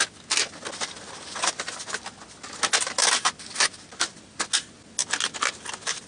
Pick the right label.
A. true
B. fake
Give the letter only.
A